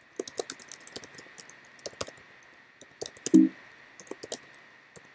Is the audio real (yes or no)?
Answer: yes